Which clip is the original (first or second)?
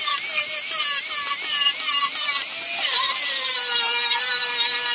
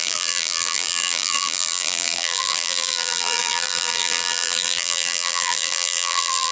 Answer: first